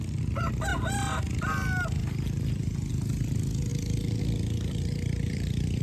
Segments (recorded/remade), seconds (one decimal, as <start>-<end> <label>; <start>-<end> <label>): 0.0-5.8 recorded